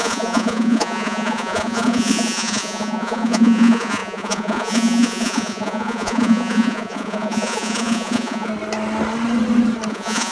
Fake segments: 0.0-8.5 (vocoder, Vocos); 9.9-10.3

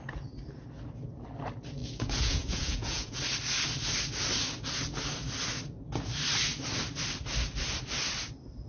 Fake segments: 1.8-3.2 (vocoder, Vocos)

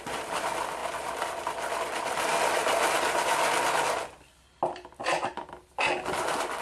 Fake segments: none

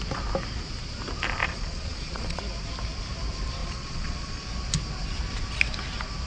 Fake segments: 1.4-2.4 (vocoder, Vocos); 3.6-4.3